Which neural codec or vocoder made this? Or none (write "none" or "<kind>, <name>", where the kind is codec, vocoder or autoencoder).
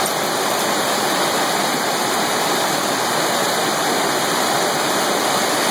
vocoder, BigVGAN v2